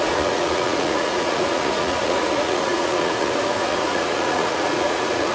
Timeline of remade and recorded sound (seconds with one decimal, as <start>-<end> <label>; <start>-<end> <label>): 0.0-5.3 remade

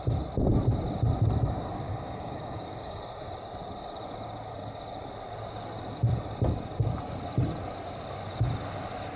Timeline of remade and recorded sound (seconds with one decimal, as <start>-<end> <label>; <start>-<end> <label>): 0.0-1.9 recorded; 1.9-3.0 remade; 3.0-9.2 recorded

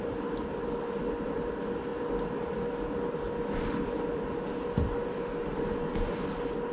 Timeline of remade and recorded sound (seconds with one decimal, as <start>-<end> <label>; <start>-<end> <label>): 0.0-6.7 recorded

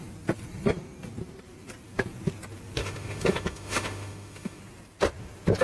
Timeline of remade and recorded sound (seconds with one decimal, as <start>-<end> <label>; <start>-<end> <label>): 0.0-2.8 recorded; 2.8-4.6 remade; 4.6-5.6 recorded